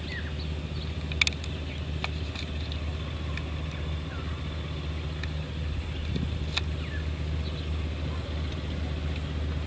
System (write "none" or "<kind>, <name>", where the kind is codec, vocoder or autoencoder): none